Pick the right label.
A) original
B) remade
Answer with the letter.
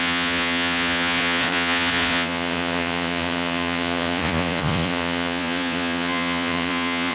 B